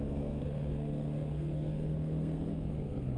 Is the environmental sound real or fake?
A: fake